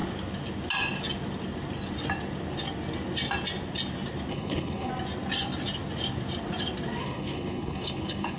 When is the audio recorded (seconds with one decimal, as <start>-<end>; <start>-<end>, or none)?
0.0-4.3; 4.9-7.0